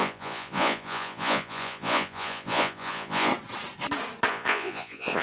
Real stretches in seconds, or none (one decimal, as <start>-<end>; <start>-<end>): 3.3-4.3